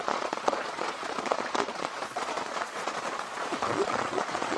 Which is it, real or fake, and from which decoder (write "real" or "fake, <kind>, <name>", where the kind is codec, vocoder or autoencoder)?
fake, vocoder, Vocos